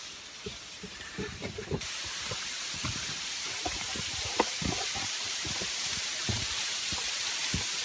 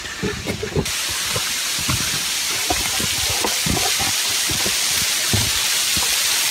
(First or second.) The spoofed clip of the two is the first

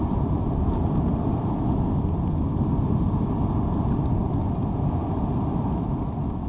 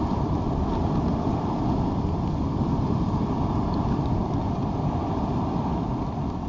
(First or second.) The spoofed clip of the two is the second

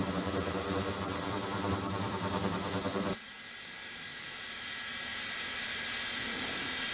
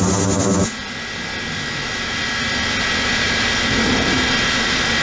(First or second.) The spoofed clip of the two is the first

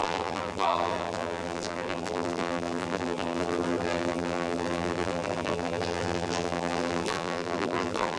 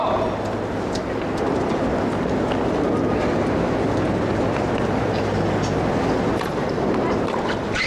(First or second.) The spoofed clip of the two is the first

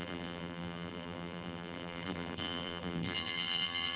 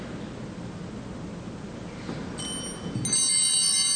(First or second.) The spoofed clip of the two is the first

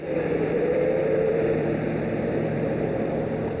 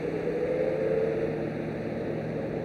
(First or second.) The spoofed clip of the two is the first